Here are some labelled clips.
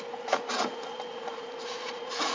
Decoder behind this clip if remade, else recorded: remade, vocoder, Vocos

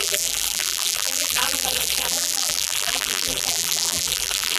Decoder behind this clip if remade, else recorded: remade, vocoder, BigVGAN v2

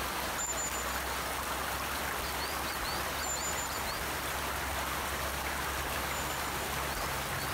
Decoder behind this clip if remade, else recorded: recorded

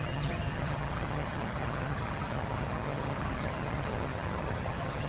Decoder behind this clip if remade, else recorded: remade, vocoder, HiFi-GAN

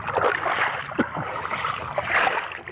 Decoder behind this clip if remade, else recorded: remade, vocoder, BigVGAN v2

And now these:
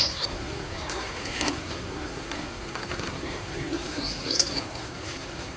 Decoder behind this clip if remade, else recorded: remade, codec, SNAC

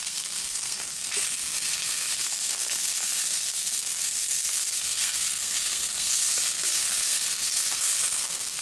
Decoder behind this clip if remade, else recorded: remade, codec, SNAC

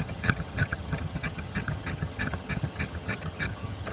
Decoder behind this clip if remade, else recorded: remade, vocoder, HiFi-GAN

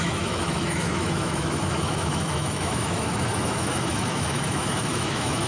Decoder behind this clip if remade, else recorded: remade, autoencoder, DAC-VAE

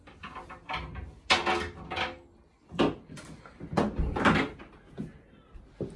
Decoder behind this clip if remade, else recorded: recorded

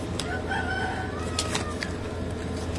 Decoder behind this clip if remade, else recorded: recorded